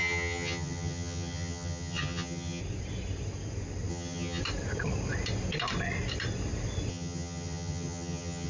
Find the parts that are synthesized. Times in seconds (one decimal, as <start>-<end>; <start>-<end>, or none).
0.0-2.6; 3.9-4.4; 6.9-8.5

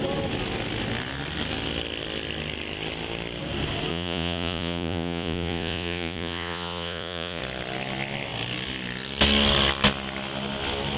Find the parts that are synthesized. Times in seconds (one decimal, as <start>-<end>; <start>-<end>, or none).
3.9-7.4

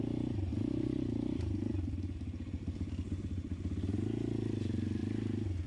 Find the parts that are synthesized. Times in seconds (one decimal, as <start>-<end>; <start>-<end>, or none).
none

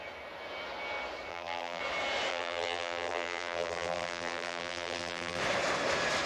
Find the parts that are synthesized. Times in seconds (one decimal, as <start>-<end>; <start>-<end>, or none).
1.3-1.8; 2.3-5.4

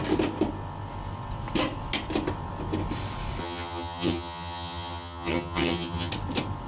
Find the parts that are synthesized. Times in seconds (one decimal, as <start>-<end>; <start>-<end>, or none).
3.4-6.1